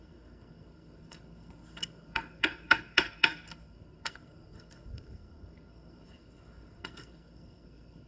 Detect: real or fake fake